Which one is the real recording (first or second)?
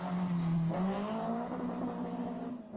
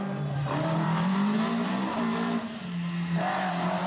first